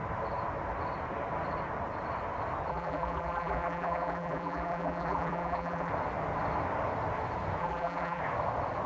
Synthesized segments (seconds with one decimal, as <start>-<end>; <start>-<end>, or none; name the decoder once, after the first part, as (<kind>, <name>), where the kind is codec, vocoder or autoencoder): 2.7-5.9 (vocoder, BigVGAN v2); 7.6-8.2